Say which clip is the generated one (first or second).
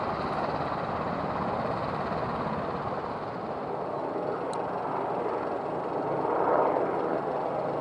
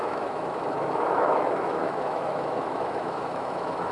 second